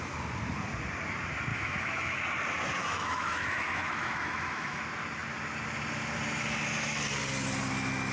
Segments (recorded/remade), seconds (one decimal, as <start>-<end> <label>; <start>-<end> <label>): 0.0-1.5 recorded; 1.5-2.2 remade; 2.2-2.8 recorded; 2.8-4.8 remade; 4.8-8.1 recorded